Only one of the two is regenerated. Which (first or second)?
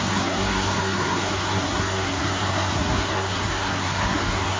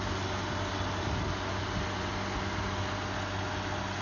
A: first